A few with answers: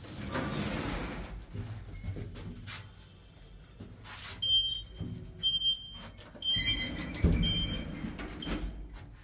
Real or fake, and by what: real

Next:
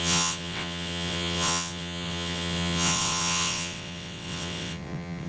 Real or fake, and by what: fake, vocoder, WaveNeXt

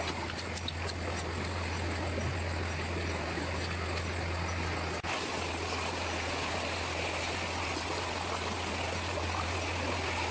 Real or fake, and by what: real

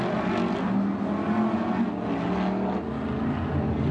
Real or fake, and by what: real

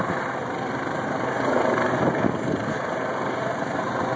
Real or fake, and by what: real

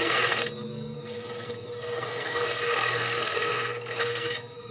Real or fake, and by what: fake, codec, SNAC